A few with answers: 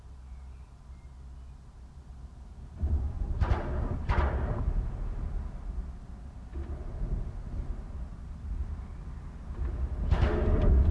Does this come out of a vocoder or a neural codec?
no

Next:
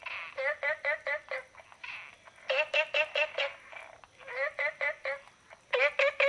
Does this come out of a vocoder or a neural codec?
no